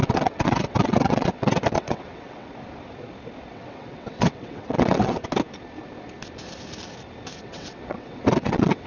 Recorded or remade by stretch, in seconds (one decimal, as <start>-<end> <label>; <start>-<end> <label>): 0.0-2.5 remade; 2.5-3.5 recorded; 3.5-5.2 remade; 5.2-7.4 recorded; 7.4-8.9 remade